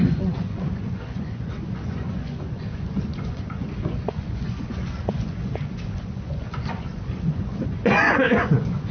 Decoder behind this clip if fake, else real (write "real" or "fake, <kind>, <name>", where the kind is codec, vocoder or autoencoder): fake, vocoder, Vocos